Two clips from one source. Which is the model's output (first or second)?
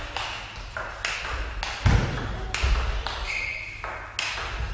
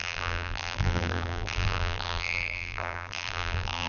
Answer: second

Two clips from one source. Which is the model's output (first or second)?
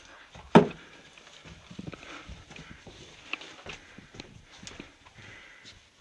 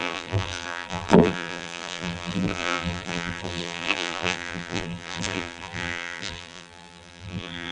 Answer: second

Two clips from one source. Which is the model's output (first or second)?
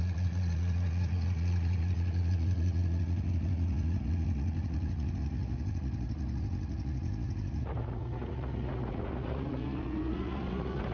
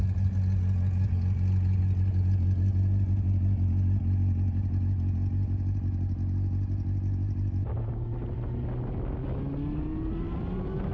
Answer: first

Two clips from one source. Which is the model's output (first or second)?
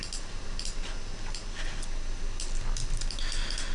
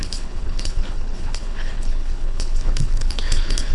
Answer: second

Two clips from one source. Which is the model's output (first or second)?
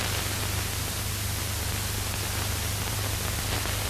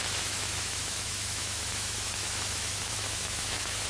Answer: second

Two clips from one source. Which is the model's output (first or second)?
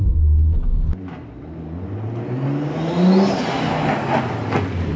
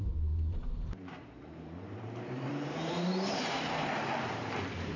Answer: second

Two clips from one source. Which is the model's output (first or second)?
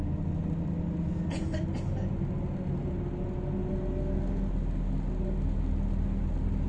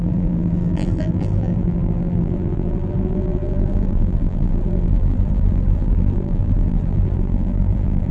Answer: second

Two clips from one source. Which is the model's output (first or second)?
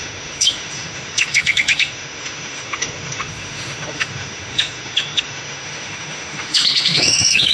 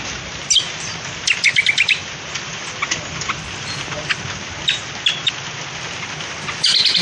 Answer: first